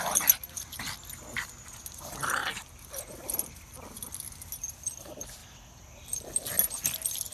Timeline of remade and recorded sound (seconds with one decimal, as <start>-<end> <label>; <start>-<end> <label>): 0.0-2.4 recorded; 2.4-3.1 remade; 3.1-7.3 recorded